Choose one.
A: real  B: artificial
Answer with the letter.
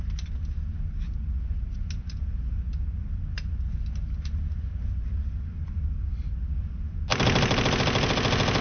A